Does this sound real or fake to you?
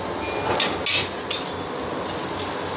real